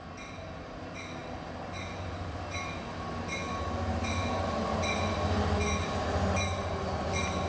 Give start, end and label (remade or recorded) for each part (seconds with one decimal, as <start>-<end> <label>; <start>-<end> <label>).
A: 0.0-7.5 recorded